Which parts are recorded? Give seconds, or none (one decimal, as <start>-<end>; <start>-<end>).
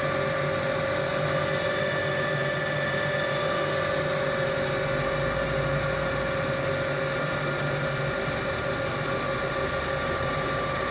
0.0-10.9